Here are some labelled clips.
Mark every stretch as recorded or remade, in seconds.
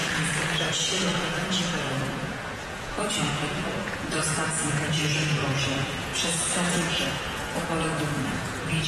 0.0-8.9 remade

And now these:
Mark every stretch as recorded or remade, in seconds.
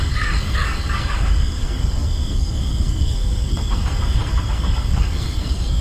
0.0-5.8 remade